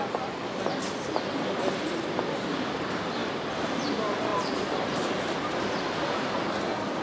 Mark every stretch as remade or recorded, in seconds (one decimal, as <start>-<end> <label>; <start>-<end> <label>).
0.0-4.3 recorded; 4.3-5.1 remade; 5.1-7.0 recorded